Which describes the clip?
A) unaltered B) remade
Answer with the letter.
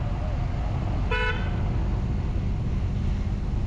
A